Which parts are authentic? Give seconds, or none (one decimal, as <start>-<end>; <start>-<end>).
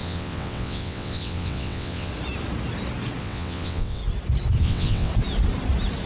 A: 2.1-3.2; 4.0-4.6; 5.1-6.1